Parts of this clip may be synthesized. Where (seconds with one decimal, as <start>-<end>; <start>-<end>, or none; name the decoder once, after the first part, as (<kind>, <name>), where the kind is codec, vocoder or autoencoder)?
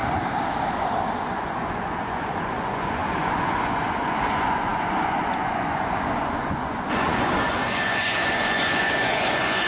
1.2-9.7 (vocoder, Vocos)